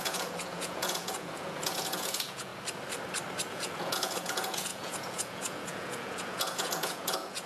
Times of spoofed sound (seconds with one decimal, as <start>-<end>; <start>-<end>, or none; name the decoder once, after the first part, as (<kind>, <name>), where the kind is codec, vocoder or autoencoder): 0.0-2.5 (vocoder, Vocos); 3.5-7.5